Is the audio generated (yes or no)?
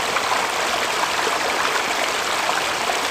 yes